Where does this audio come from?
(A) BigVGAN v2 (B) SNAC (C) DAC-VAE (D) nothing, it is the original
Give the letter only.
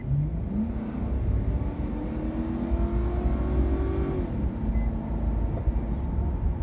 D